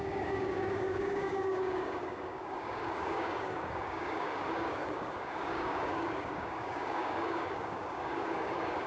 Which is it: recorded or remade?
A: remade